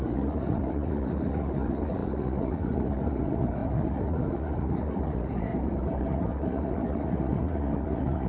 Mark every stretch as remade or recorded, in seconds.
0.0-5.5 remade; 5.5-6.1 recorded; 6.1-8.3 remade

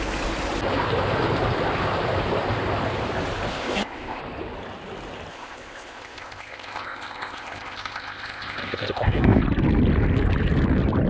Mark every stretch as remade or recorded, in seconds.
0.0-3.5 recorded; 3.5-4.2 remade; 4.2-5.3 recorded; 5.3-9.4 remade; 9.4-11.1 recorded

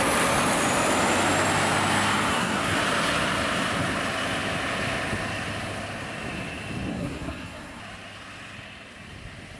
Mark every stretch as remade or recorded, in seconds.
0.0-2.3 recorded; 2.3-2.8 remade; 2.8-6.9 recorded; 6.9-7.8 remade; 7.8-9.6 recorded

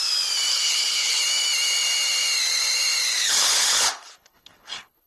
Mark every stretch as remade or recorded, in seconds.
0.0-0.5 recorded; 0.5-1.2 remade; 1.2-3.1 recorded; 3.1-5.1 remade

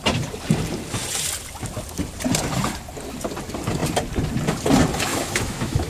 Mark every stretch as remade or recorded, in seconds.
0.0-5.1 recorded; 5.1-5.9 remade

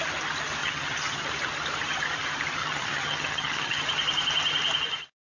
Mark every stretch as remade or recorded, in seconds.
0.0-0.6 recorded; 0.6-1.3 remade; 1.3-2.6 recorded; 2.6-3.8 remade; 3.8-5.3 recorded

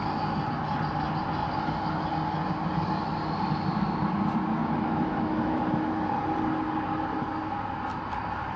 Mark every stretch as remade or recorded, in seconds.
0.0-4.6 recorded; 4.6-5.6 remade; 5.6-8.6 recorded

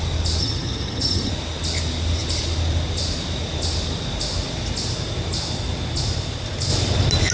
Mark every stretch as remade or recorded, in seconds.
0.0-0.4 recorded; 0.4-1.3 remade; 1.3-7.3 recorded